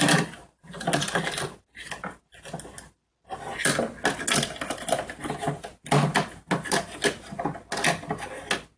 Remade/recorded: recorded